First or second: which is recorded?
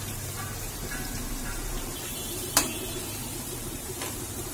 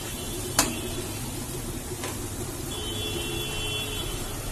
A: second